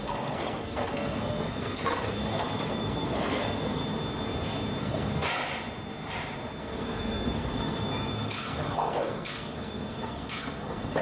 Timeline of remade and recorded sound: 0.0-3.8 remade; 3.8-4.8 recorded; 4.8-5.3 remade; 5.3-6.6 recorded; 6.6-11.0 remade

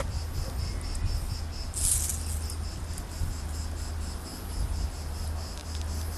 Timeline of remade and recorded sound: 0.0-6.2 recorded

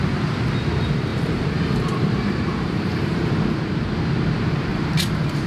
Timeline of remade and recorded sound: 0.0-1.1 recorded; 1.1-3.6 remade; 3.6-4.7 recorded; 4.7-5.5 remade